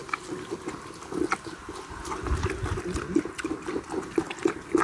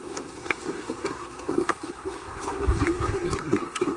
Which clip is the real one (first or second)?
first